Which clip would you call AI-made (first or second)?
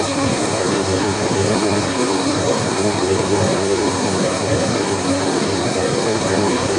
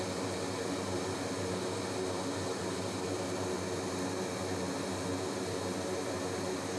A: first